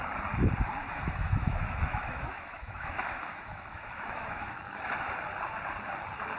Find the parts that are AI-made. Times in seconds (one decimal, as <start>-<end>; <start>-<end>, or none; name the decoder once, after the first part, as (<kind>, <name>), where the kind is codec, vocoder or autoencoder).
0.8-4.6 (autoencoder, DAC-VAE)